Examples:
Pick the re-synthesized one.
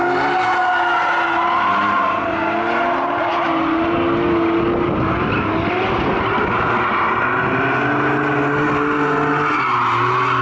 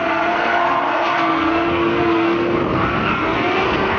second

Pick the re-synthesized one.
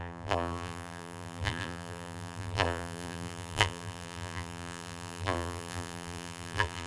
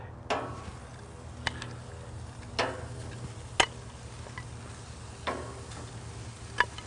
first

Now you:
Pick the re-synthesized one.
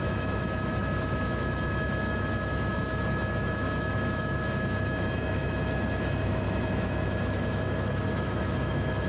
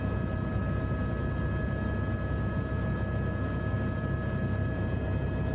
first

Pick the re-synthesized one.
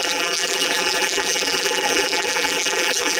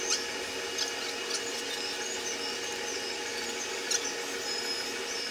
first